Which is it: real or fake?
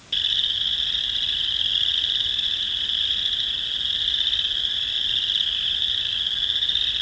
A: real